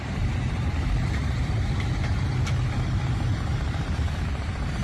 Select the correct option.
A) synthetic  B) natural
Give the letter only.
A